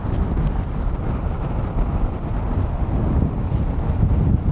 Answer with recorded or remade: recorded